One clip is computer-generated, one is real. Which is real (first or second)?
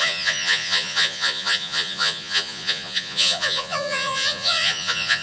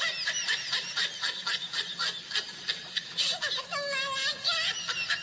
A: second